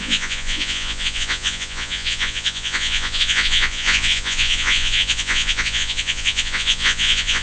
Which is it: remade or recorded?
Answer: remade